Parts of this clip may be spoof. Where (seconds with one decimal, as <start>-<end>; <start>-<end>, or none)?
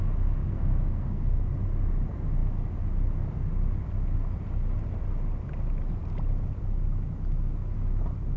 0.4-1.5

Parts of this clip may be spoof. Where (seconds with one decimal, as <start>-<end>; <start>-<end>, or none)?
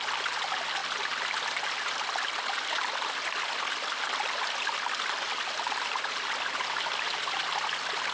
none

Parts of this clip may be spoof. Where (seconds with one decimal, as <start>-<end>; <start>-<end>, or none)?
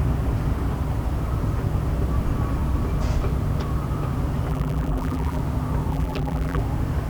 4.5-5.4; 5.9-6.6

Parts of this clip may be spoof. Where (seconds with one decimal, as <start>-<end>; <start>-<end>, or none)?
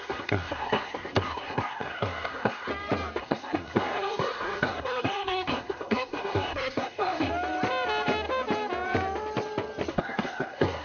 0.0-2.7; 3.2-7.3; 9.9-10.8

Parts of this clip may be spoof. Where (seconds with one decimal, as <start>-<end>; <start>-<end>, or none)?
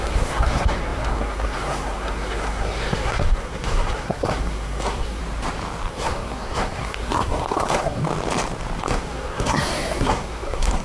0.0-5.2; 5.9-8.0; 8.8-10.8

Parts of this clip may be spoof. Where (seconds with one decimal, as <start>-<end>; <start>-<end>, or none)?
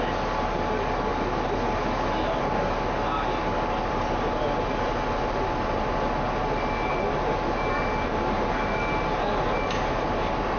none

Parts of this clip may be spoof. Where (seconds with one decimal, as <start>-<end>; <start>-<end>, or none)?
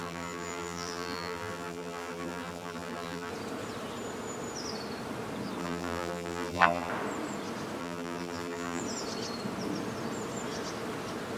0.0-3.3; 5.6-6.9; 7.8-8.8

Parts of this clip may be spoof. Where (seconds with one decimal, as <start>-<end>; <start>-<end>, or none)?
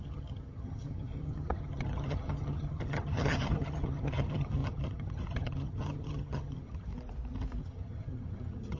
0.0-6.9; 7.6-8.8